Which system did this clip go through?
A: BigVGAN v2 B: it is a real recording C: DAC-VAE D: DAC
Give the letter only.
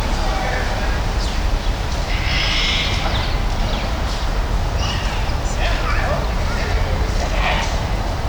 B